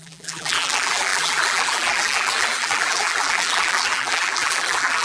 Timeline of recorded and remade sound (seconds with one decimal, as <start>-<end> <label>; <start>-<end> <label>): 0.0-5.0 remade

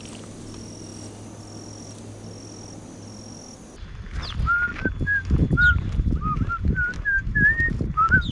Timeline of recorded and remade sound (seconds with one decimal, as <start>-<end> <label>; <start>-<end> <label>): 0.0-8.3 recorded

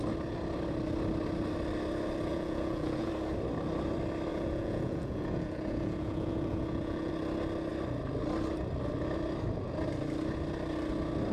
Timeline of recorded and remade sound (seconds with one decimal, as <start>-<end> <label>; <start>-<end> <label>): 0.0-2.3 recorded; 2.3-3.1 remade; 3.1-4.3 recorded; 4.3-7.1 remade; 7.1-11.3 recorded

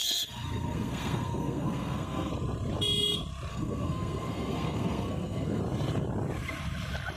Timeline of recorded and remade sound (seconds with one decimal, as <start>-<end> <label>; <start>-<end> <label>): 0.0-2.3 remade; 2.3-3.5 recorded; 3.5-5.6 remade; 5.6-7.2 recorded

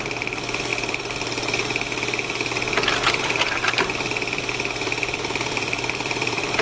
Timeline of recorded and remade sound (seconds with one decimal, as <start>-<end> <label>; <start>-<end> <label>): 0.0-0.7 remade; 0.7-2.9 recorded; 2.9-6.6 remade

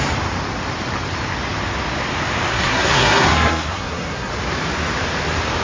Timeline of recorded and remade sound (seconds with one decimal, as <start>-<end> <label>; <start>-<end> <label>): 0.0-2.5 recorded; 2.5-4.3 remade; 4.3-5.6 recorded